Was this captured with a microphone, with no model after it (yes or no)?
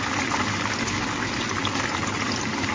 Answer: yes